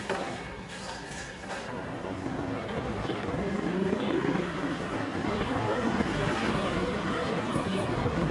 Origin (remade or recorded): remade